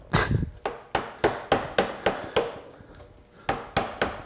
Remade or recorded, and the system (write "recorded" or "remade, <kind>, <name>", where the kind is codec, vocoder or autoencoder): recorded